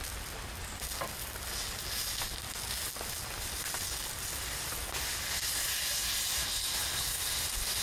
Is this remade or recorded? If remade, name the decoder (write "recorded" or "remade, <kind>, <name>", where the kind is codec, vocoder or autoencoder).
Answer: recorded